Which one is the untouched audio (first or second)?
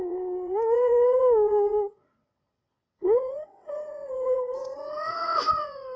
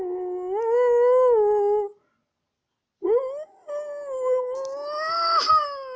second